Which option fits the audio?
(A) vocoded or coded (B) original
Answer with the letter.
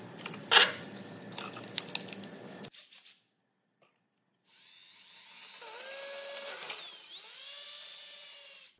B